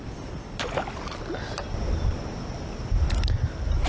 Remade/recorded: recorded